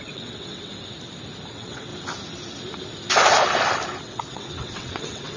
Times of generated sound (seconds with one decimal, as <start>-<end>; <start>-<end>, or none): 0.0-0.7; 1.5-1.9; 4.0-5.4